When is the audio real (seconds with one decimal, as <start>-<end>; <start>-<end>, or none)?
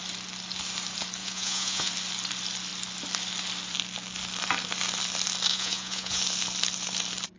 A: 0.0-1.2; 1.9-5.5; 6.2-7.4